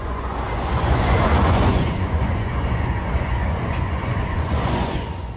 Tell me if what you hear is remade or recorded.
remade